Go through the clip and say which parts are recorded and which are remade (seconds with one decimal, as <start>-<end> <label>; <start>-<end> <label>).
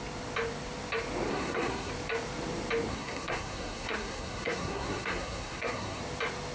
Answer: 0.0-1.3 recorded; 1.3-1.9 remade; 1.9-2.9 recorded; 2.9-6.0 remade; 6.0-6.5 recorded